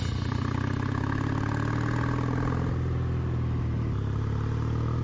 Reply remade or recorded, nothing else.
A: recorded